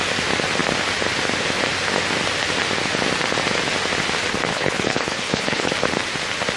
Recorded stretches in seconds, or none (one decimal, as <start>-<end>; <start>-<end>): 0.0-4.5; 5.7-6.6